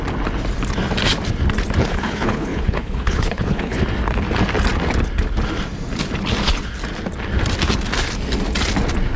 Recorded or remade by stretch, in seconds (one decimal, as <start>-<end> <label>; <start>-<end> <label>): 0.0-1.8 recorded; 1.8-3.8 remade; 3.8-9.2 recorded